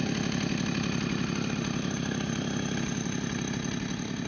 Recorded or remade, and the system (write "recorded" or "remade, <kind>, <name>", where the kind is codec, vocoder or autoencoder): recorded